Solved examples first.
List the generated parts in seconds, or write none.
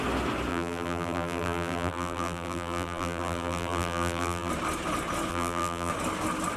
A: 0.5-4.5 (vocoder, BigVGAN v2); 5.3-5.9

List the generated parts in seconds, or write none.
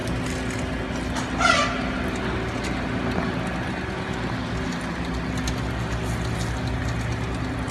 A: none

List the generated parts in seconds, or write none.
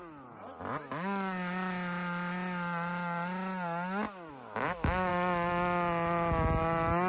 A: 4.3-5.1 (autoencoder, DAC-VAE)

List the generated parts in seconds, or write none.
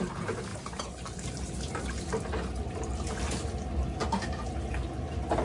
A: 0.5-2.0 (vocoder, BigVGAN v2)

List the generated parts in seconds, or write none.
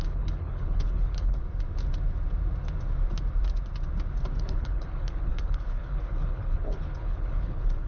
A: 0.0-1.4 (codec, HILCodec); 4.4-7.9